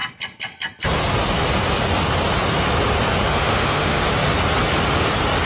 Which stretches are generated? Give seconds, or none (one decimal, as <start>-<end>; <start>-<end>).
3.3-4.0